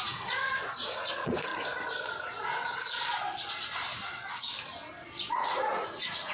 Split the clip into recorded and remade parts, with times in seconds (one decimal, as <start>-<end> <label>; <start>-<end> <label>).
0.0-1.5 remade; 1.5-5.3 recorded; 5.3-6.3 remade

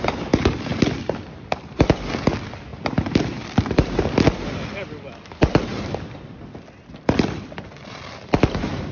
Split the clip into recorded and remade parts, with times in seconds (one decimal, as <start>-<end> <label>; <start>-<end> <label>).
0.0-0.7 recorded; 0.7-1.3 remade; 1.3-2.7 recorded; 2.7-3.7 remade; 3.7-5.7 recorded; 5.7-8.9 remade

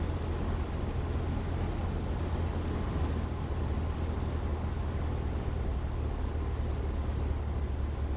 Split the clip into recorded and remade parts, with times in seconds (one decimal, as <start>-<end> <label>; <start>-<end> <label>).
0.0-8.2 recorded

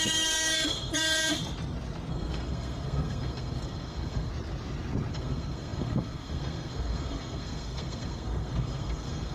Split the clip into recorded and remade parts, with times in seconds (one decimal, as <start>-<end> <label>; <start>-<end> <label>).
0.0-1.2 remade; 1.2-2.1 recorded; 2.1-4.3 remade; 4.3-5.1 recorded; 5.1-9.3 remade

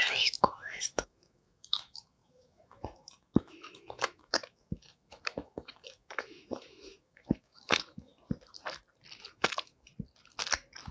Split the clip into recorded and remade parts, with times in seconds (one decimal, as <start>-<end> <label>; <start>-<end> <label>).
0.0-8.1 remade; 8.1-9.3 recorded; 9.3-9.9 remade; 9.9-10.9 recorded

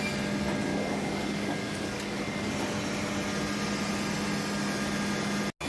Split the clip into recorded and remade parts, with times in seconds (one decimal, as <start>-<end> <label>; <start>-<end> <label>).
0.0-0.7 recorded; 0.7-2.5 remade; 2.5-5.7 recorded